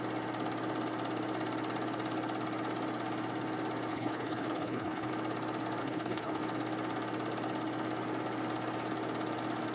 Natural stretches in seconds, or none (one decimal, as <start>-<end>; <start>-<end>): 0.0-3.9; 5.1-5.8; 6.4-9.7